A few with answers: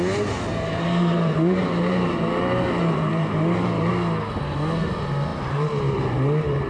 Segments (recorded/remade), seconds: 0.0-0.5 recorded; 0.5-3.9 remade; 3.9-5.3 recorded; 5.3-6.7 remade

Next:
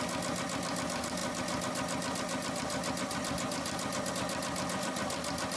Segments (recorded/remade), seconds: 0.0-5.6 recorded